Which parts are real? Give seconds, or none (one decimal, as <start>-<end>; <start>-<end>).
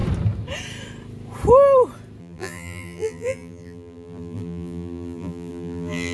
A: 0.0-2.2